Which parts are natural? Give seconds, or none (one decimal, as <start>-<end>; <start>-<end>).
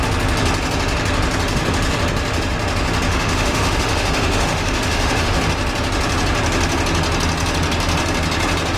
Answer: 0.0-3.1; 5.4-8.8